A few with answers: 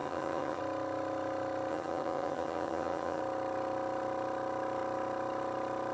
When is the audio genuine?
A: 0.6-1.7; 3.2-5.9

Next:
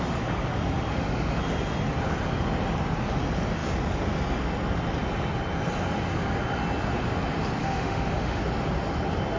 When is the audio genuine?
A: 0.0-0.9; 1.4-7.6; 8.4-9.4

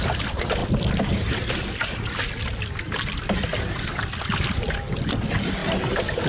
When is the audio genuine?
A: 0.0-6.3